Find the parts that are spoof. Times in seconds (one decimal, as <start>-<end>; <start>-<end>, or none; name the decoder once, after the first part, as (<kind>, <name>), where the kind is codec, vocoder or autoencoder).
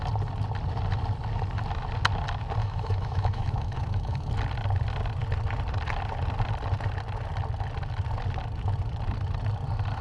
2.6-4.3 (autoencoder, DAC-VAE)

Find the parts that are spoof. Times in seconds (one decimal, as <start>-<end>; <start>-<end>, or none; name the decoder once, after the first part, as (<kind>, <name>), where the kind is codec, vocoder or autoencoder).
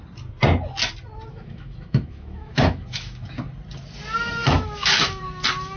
1.3-3.4 (autoencoder, DAC-VAE); 4.4-5.2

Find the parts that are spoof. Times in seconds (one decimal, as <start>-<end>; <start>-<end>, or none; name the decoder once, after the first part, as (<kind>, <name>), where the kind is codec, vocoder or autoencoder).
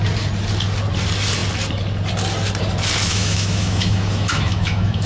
3.1-5.1 (autoencoder, DAC-VAE)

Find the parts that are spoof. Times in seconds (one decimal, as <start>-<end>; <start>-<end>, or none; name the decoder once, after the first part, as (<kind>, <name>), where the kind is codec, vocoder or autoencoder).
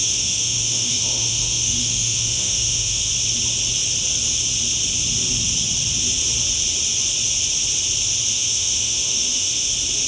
0.0-3.1 (autoencoder, DAC-VAE); 8.3-9.7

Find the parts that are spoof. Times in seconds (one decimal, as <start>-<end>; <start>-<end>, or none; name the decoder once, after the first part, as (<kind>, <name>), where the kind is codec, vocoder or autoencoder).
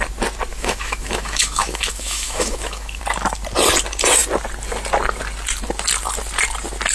0.5-3.0 (autoencoder, DAC-VAE)